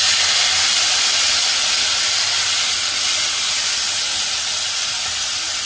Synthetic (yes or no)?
no